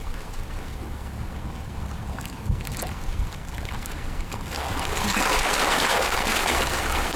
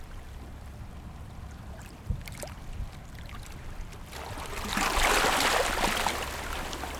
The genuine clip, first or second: second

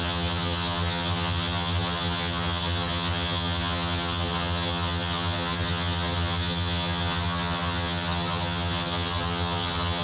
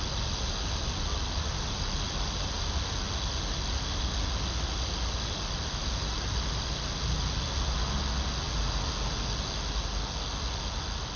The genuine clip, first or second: second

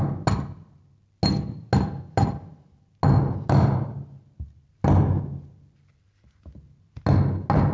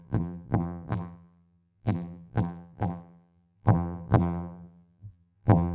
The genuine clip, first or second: first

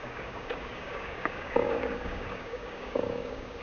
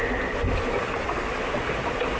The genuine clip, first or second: second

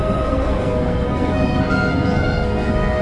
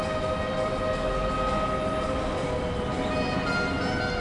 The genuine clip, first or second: second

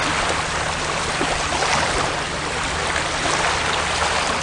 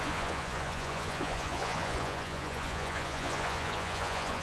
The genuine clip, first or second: first